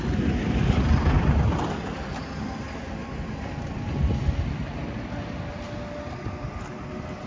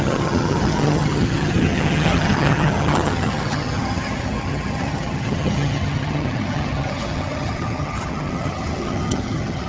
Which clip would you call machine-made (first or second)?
second